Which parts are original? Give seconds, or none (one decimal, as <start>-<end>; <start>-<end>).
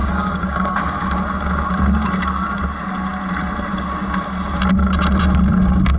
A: 1.2-6.0